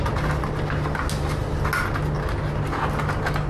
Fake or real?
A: real